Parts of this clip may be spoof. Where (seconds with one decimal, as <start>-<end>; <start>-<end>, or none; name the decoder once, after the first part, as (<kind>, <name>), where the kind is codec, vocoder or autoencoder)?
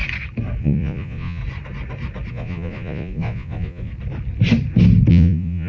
0.6-1.4 (vocoder, Vocos); 2.3-3.9; 5.1-5.7